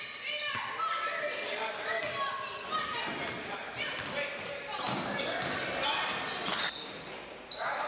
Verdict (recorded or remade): recorded